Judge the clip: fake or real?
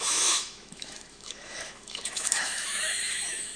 fake